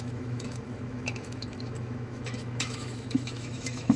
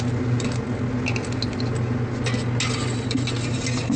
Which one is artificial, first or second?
first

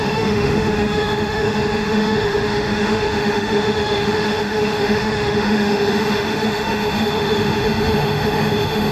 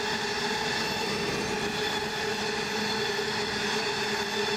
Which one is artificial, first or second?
first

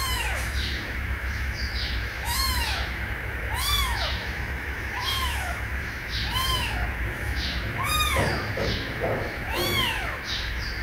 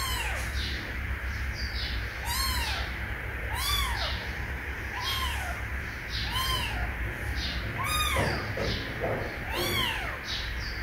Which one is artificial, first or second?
first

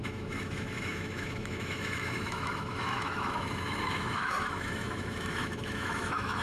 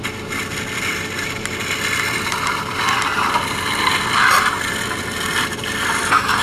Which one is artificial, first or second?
first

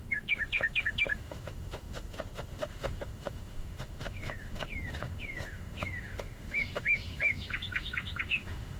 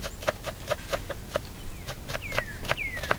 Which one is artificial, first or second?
first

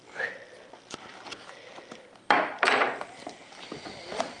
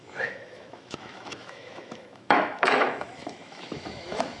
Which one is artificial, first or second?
second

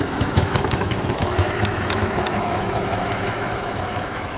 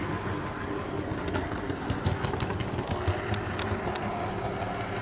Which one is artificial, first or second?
first